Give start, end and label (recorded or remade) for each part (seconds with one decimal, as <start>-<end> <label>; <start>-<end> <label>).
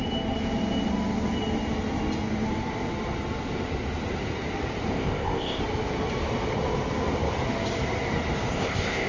0.0-4.9 recorded; 4.9-5.6 remade; 5.6-8.5 recorded; 8.5-9.1 remade